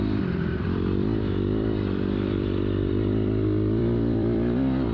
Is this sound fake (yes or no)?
yes